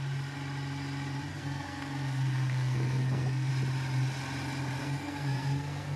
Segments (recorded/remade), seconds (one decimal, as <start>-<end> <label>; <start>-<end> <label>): 0.0-1.3 recorded; 1.3-3.5 remade; 3.5-4.8 recorded; 4.8-6.0 remade